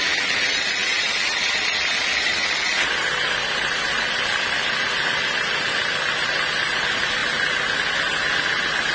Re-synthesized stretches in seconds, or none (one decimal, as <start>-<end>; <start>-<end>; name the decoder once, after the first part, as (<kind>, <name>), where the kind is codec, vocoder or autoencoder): 0.0-7.2 (vocoder, BigVGAN v2)